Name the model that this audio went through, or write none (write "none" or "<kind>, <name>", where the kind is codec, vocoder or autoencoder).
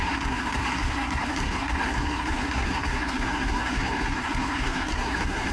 codec, SNAC